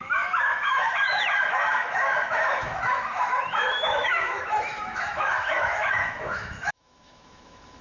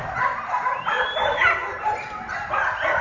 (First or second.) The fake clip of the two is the first